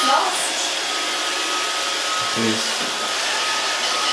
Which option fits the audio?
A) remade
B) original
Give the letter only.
B